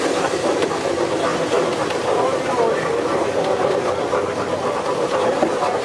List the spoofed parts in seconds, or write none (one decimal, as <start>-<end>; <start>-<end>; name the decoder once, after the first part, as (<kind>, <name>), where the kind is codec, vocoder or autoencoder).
none